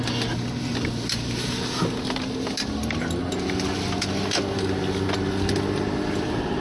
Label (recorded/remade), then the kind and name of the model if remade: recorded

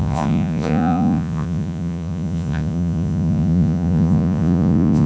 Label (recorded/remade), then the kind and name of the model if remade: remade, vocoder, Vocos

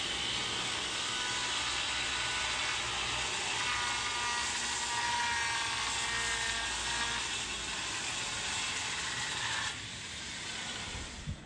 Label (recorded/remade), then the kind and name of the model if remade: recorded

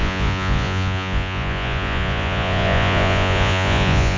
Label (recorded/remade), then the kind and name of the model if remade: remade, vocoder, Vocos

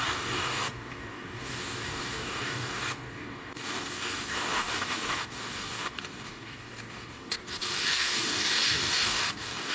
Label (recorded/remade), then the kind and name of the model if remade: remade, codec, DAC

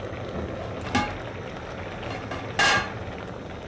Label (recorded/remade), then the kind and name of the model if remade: recorded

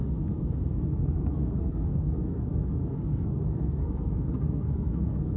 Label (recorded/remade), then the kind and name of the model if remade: remade, codec, SNAC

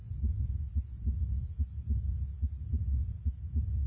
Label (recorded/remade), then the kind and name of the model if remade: recorded